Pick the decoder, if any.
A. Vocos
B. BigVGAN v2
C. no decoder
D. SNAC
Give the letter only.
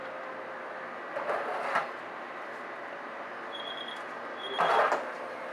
C